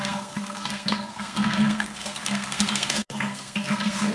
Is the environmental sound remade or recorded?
remade